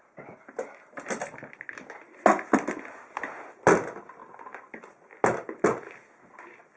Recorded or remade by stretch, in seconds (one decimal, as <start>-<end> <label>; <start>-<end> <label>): 0.0-6.8 recorded